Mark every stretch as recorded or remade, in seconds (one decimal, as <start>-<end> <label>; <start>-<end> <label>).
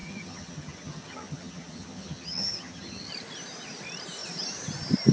0.0-3.1 remade; 3.1-5.1 recorded